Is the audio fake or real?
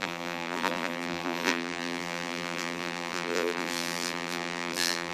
fake